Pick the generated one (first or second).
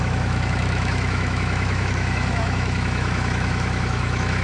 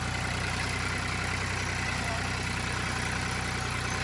first